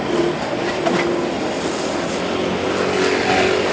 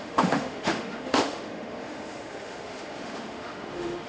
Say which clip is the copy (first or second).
second